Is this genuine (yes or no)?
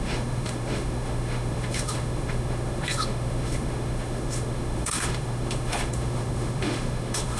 no